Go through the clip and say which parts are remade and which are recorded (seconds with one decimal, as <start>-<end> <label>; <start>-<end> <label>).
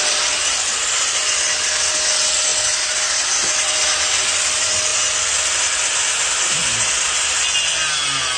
0.0-8.4 recorded